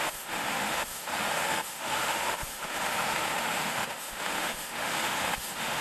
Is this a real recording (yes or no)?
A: no